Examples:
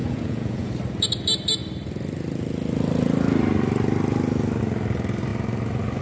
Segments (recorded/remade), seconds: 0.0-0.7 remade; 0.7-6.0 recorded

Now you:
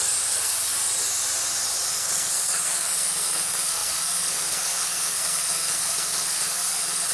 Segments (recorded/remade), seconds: 0.0-0.5 remade; 0.5-1.9 recorded; 1.9-7.1 remade

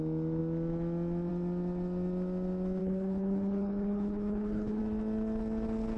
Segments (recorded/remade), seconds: 0.0-2.8 recorded; 2.8-4.8 remade; 4.8-6.0 recorded